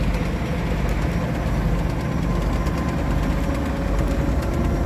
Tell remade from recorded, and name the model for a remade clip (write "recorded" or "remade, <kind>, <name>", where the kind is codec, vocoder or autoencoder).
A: recorded